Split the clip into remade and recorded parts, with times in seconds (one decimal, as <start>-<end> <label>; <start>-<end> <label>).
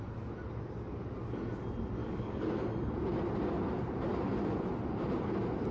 0.0-2.0 recorded; 2.0-2.6 remade; 2.6-5.7 recorded